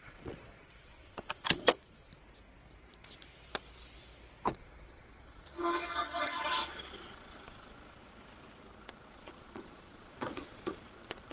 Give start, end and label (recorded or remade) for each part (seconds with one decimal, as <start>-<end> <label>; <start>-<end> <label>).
0.0-2.1 remade; 2.1-4.5 recorded; 4.5-8.0 remade; 8.0-9.1 recorded; 9.1-11.3 remade